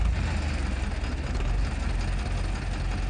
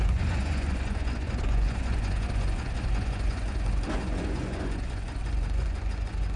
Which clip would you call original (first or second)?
first